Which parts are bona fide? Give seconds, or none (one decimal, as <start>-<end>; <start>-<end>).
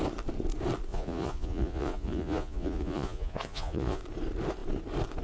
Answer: 0.0-0.9; 4.0-5.2